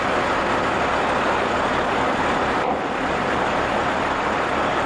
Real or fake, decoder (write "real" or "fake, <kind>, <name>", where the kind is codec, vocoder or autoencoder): fake, vocoder, BigVGAN v2